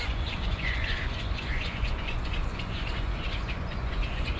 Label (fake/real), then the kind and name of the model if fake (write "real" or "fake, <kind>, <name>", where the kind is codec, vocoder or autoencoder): fake, vocoder, Vocos